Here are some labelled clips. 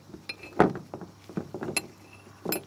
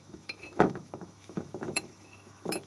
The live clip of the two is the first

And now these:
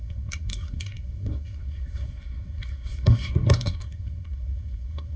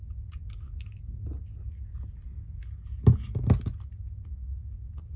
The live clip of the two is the second